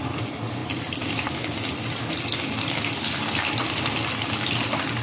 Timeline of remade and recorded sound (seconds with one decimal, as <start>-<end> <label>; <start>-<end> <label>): 0.0-5.0 recorded